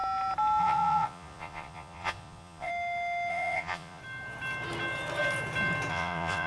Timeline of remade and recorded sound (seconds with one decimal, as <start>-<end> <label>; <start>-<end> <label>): 0.0-0.6 recorded; 0.6-2.7 remade; 2.7-3.3 recorded; 3.3-4.0 remade; 4.0-5.9 recorded; 5.9-6.5 remade